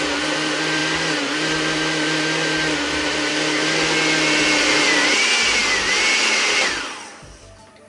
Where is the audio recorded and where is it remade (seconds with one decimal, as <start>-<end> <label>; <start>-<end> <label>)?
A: 0.0-7.9 recorded